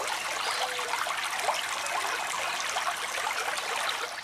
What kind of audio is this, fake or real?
real